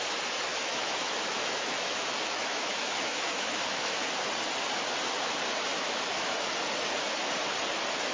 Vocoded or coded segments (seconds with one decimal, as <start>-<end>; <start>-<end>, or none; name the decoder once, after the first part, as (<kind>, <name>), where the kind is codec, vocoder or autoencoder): 0.5-4.1 (autoencoder, DAC-VAE); 5.7-6.3